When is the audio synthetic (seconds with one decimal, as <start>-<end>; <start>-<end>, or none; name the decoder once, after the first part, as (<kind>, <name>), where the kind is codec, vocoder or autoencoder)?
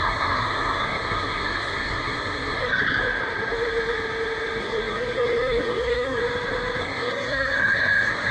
0.0-2.8 (codec, SNAC); 4.6-6.2; 6.8-8.3